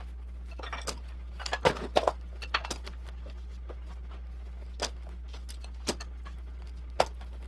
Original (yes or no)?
yes